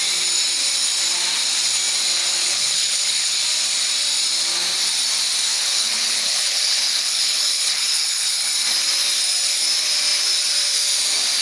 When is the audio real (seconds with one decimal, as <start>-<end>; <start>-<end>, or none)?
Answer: 0.0-2.4; 3.4-5.5; 8.5-11.4